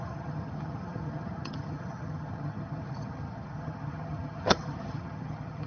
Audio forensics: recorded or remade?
remade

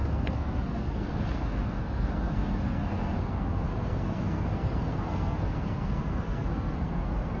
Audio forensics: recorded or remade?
remade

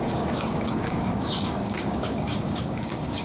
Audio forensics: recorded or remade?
remade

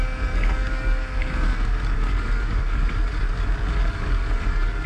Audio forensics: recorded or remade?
remade